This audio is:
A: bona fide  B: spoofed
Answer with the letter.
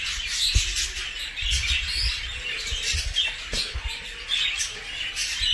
A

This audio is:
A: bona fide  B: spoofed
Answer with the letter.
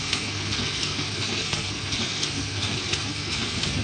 B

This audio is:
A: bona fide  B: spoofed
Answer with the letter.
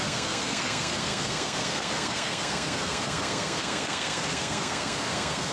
B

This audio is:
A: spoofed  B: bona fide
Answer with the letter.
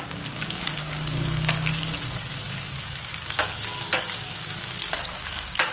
A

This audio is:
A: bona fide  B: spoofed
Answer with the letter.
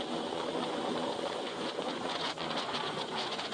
B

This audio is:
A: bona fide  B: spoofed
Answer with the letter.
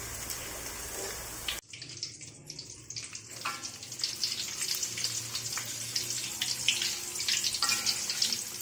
A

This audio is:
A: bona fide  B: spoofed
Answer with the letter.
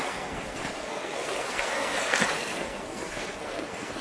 B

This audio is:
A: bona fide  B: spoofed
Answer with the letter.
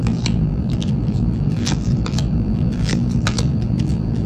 B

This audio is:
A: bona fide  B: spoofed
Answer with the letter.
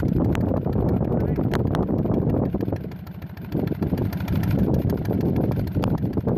A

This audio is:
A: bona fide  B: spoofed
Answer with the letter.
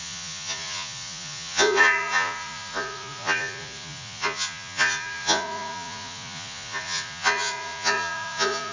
B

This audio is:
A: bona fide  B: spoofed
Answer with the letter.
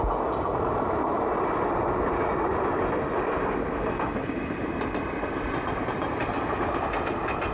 A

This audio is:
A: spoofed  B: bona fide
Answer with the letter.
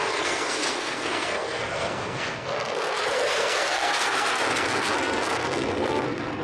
A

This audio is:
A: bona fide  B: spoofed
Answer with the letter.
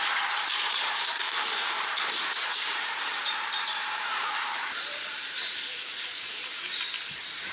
B